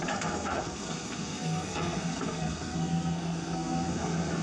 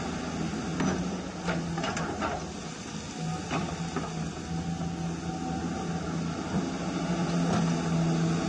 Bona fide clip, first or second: second